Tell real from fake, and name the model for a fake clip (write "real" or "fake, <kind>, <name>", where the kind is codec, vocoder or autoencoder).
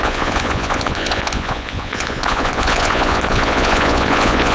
fake, vocoder, Vocos